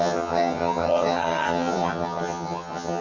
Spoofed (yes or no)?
yes